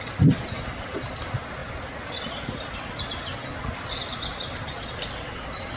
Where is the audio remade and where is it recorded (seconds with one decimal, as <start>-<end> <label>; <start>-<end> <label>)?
0.0-5.8 recorded